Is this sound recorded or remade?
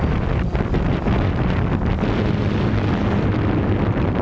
recorded